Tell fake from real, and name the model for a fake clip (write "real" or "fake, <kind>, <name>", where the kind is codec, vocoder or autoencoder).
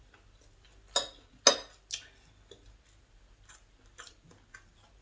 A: real